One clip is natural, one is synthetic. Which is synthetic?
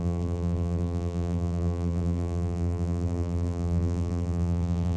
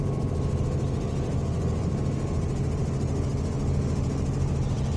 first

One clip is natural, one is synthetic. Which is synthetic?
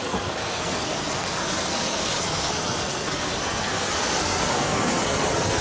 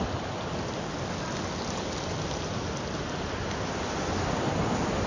first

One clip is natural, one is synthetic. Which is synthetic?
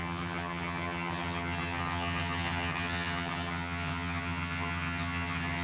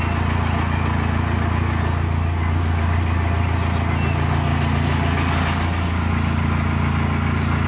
first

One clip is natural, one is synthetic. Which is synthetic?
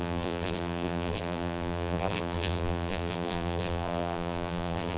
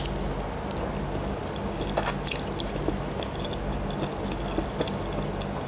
first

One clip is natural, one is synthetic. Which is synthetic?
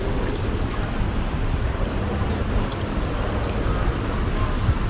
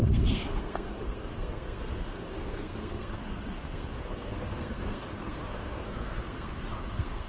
second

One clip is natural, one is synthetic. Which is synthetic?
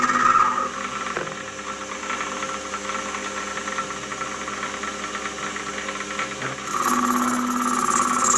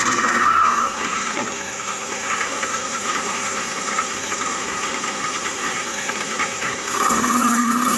second